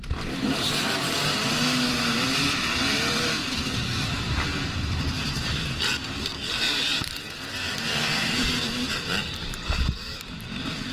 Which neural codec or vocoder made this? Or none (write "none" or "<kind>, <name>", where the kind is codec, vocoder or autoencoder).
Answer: vocoder, BigVGAN v2